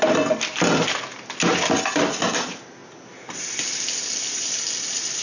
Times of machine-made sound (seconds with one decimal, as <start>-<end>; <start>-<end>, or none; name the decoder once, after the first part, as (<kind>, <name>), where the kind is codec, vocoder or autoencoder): none